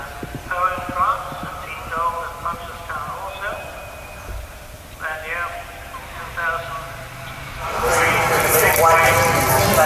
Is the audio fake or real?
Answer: real